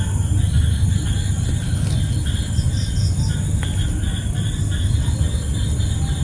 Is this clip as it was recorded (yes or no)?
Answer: yes